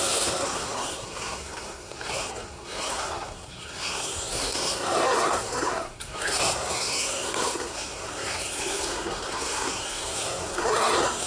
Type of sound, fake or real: fake